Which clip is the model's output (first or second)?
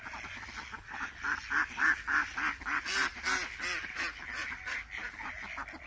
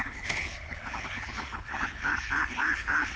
second